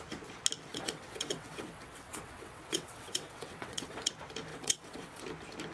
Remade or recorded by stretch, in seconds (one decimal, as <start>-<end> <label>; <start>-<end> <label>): 0.0-0.7 recorded; 0.7-4.1 remade; 4.1-4.5 recorded; 4.5-5.2 remade; 5.2-5.7 recorded